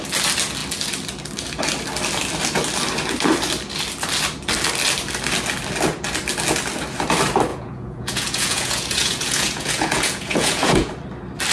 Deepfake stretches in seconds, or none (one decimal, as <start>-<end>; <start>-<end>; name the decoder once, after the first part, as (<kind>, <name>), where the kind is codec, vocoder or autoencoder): 7.5-10.9 (vocoder, Vocos)